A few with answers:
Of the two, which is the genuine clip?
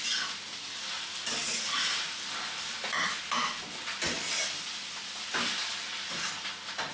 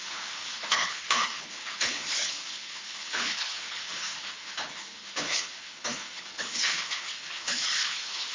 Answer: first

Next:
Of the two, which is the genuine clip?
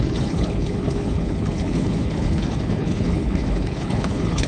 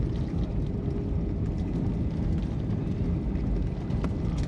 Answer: second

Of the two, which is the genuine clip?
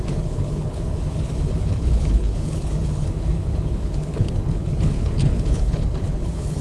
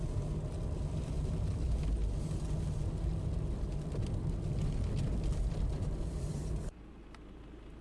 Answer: second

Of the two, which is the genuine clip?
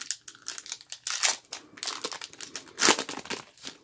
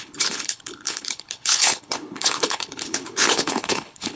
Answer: first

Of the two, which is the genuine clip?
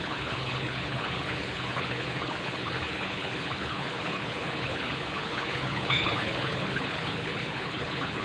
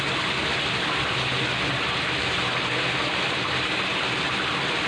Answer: second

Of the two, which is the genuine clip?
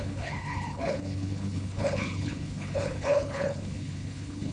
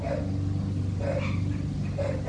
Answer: second